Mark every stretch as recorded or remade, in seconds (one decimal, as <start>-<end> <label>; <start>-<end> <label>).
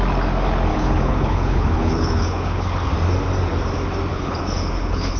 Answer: 0.0-0.7 recorded; 0.7-2.9 remade; 2.9-4.1 recorded; 4.1-5.2 remade